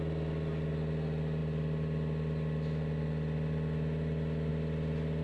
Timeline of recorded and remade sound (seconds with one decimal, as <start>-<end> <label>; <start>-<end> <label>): 0.0-5.2 recorded